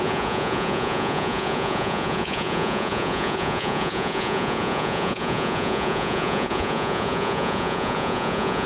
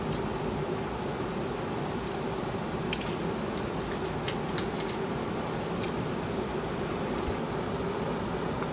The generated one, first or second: first